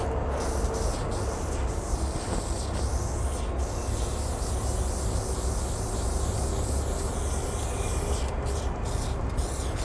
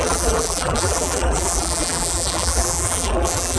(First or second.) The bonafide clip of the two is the first